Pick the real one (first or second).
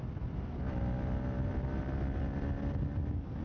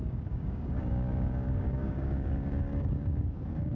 first